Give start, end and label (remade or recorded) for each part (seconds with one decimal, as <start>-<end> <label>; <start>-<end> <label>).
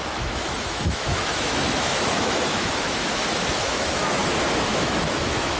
0.0-4.2 remade; 4.2-4.8 recorded; 4.8-5.6 remade